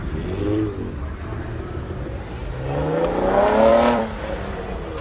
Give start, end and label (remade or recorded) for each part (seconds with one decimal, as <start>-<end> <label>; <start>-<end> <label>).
0.0-1.3 recorded; 1.3-2.3 remade; 2.3-3.7 recorded; 3.7-4.6 remade; 4.6-5.0 recorded